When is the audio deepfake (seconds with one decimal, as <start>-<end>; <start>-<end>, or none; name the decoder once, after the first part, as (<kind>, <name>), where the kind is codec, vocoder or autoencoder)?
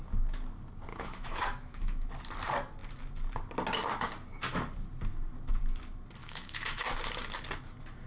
0.9-2.1 (autoencoder, DAC-VAE); 6.2-6.9